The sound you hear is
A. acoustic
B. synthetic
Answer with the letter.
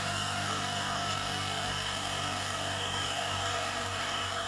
B